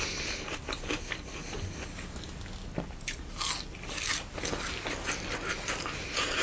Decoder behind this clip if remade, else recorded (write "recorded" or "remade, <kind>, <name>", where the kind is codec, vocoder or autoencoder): recorded